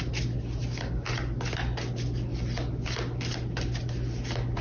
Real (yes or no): yes